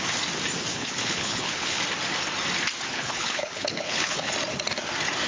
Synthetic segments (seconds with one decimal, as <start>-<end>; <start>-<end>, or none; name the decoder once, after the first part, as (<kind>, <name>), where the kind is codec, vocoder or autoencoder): 0.7-1.8 (codec, HILCodec); 2.9-4.3